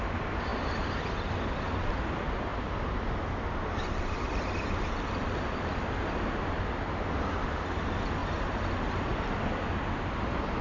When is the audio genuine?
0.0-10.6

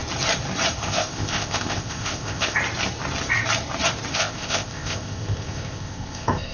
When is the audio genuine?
0.0-0.8; 2.6-4.1

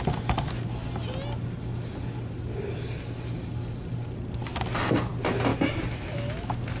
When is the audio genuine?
0.0-6.8